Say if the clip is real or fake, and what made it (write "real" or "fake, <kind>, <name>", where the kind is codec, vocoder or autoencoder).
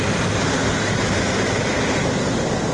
real